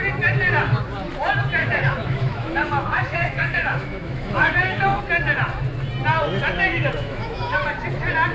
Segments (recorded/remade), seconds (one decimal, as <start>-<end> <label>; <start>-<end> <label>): 0.0-1.6 recorded; 1.6-5.0 remade; 5.0-6.7 recorded; 6.7-7.6 remade; 7.6-8.3 recorded